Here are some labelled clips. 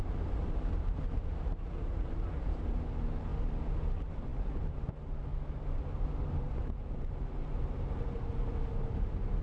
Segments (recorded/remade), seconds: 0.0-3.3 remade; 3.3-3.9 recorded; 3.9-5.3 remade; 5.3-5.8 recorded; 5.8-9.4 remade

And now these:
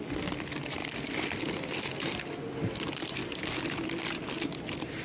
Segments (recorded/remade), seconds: 0.0-3.2 recorded; 3.2-5.0 remade

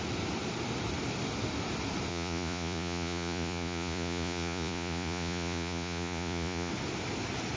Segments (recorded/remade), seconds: 0.0-2.1 recorded; 2.1-6.7 remade; 6.7-7.6 recorded

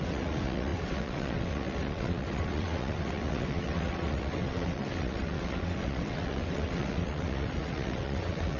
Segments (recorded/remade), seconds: 0.0-8.6 remade